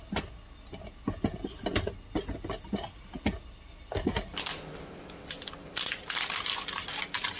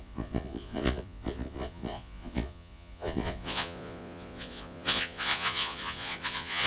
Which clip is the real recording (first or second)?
first